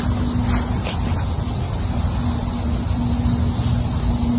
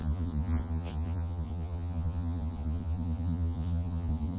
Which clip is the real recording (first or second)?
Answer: first